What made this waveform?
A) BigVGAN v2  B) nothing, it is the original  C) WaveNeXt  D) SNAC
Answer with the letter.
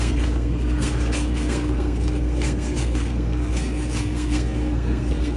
D